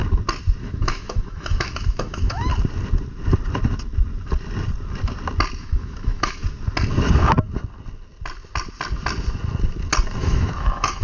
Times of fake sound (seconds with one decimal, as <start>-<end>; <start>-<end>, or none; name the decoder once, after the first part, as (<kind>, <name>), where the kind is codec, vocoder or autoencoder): 0.6-2.5 (autoencoder, DAC-VAE); 5.6-6.4; 10.2-11.0